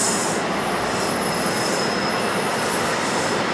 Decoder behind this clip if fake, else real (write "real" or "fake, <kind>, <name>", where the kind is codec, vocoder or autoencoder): real